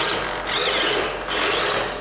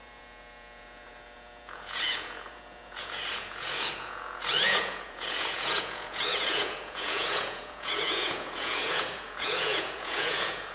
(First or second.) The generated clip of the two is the second